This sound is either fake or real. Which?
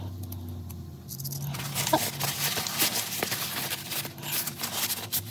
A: real